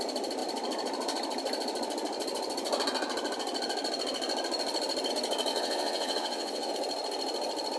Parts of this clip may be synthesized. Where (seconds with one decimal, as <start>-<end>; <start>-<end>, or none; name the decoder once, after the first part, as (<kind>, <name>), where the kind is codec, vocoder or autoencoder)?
5.5-6.7 (vocoder, WaveNeXt)